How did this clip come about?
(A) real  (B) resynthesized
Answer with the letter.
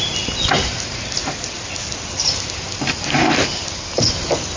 A